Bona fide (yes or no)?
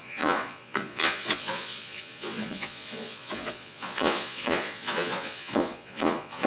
no